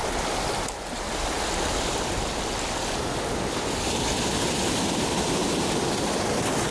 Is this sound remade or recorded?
recorded